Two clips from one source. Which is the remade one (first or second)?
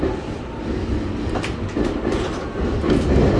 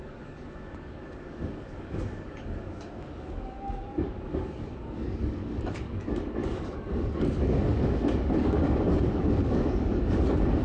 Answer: second